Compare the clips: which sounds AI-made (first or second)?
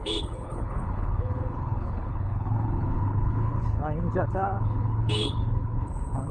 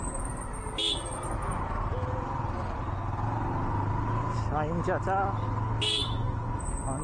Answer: first